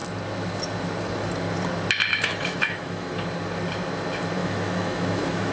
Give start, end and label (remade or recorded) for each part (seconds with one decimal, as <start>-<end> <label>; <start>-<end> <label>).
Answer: 0.0-2.1 recorded; 2.1-3.1 remade; 3.1-4.4 recorded; 4.4-5.5 remade